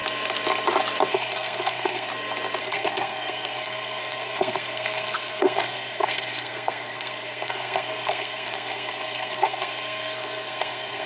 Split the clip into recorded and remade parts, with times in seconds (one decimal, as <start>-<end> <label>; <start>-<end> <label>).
0.0-1.1 recorded; 1.1-2.1 remade; 2.1-2.6 recorded; 2.6-11.1 remade